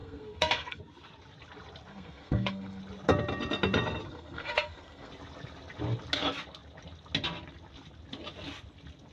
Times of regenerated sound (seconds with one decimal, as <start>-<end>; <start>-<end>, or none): 0.0-0.8; 1.9-2.8; 4.1-5.1